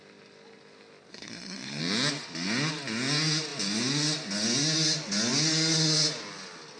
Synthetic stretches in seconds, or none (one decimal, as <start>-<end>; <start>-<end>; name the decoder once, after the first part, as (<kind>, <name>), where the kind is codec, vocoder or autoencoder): 1.1-1.8 (codec, SNAC)

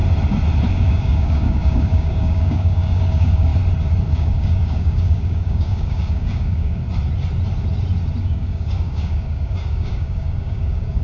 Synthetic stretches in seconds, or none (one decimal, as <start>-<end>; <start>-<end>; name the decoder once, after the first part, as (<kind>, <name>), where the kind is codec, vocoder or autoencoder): 0.7-3.5 (codec, DAC); 4.1-6.8; 8.2-11.0

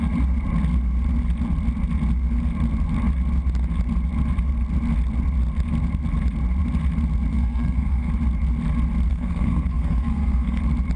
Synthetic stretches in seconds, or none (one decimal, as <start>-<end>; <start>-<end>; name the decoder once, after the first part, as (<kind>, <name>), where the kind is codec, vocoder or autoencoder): 7.3-8.1 (codec, SNAC); 9.1-10.6

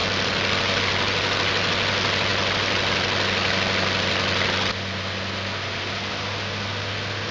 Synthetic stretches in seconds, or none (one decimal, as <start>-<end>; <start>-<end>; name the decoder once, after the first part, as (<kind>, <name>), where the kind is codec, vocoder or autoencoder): none

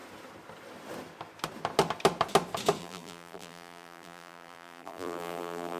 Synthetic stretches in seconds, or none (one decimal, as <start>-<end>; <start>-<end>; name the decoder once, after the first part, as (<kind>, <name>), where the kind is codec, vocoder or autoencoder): 2.8-5.8 (vocoder, BigVGAN v2)

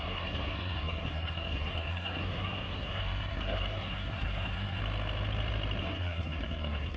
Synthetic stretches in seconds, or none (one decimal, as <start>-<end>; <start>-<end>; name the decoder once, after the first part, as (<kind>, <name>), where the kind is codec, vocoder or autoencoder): 0.0-4.8 (codec, SNAC); 5.8-7.0